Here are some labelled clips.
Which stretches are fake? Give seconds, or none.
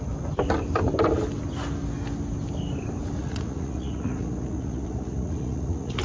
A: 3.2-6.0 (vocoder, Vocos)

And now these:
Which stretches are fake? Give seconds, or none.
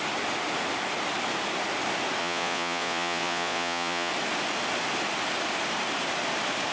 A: 2.2-4.1 (vocoder, Vocos)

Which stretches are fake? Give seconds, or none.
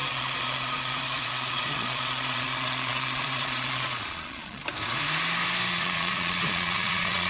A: 0.0-4.6 (vocoder, Vocos); 5.7-7.3